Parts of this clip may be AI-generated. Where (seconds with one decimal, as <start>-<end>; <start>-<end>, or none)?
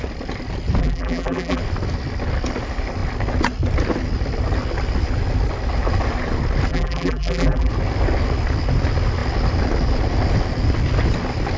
0.8-1.6; 6.7-7.7